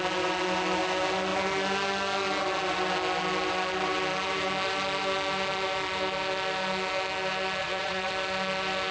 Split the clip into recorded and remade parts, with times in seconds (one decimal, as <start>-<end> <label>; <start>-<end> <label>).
0.0-7.6 recorded; 7.6-8.1 remade; 8.1-8.9 recorded